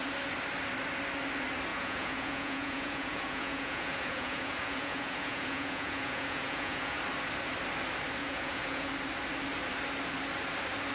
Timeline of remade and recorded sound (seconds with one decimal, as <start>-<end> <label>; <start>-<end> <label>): 0.0-1.7 recorded; 1.7-7.0 remade; 7.0-8.2 recorded; 8.2-8.9 remade; 8.9-10.9 recorded